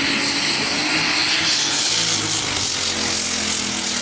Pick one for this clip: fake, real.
real